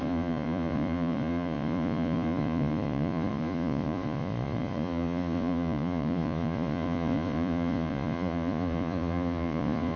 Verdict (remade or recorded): remade